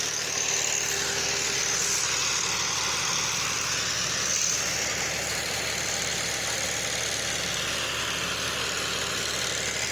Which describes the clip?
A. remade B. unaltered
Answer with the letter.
B